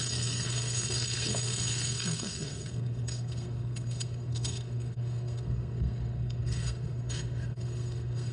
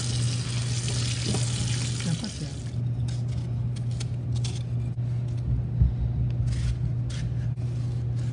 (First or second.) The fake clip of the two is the first